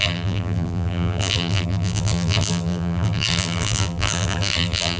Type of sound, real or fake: fake